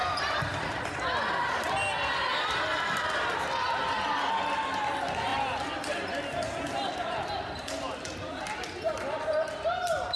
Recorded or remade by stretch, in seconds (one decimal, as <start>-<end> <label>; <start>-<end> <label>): 0.0-10.2 recorded